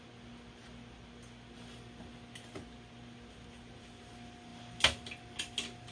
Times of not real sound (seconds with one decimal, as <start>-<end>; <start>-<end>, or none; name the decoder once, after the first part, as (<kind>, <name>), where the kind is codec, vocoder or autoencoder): none